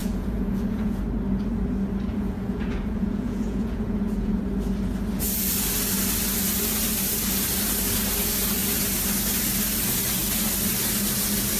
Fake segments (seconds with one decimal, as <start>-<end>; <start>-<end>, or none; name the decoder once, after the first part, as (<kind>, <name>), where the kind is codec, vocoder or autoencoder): 0.0-1.0 (vocoder, Vocos); 2.1-4.4